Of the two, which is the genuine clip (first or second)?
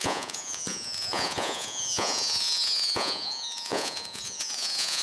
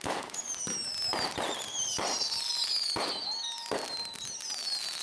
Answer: second